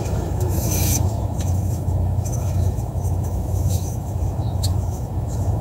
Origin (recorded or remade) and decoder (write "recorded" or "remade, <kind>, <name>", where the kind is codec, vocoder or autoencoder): remade, autoencoder, DAC-VAE